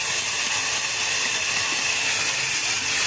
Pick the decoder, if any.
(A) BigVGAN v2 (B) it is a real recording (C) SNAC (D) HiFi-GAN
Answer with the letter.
B